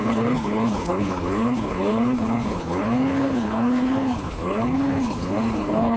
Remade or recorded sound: remade